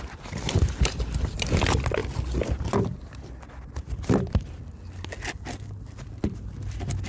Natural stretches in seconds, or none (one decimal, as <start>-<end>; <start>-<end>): 0.0-7.1